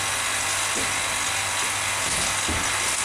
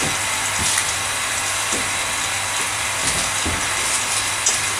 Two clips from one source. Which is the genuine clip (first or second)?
first